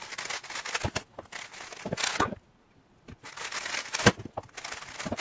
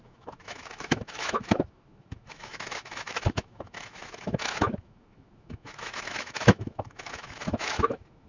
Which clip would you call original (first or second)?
first